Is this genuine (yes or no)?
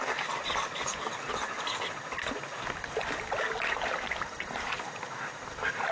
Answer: yes